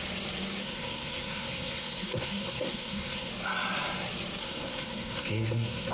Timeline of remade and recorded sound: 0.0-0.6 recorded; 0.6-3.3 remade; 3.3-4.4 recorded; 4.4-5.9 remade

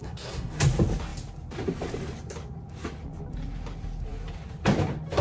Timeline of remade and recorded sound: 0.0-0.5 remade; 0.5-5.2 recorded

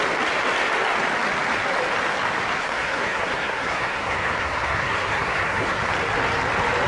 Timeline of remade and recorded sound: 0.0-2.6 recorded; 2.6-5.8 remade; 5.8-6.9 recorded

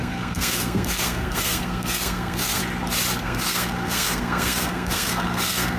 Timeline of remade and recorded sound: 0.0-2.6 remade; 2.6-3.2 recorded; 3.2-5.8 remade

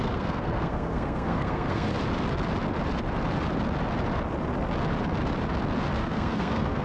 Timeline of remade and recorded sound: 0.0-1.9 remade; 1.9-6.0 recorded; 6.0-6.8 remade

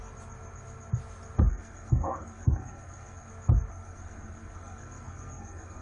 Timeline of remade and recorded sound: 0.0-1.5 recorded; 1.5-3.3 remade; 3.3-3.7 recorded; 3.7-5.8 remade